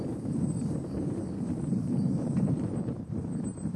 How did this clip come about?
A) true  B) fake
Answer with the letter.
B